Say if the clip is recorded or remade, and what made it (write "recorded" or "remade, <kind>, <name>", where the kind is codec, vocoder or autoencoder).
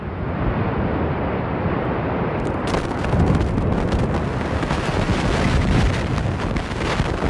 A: recorded